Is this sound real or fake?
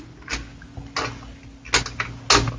real